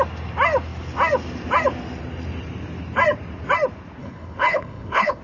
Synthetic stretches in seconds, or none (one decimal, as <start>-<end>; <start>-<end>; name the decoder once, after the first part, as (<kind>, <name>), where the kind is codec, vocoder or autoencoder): 4.0-5.2 (codec, HILCodec)